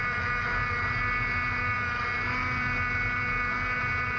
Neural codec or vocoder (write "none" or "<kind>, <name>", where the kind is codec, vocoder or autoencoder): none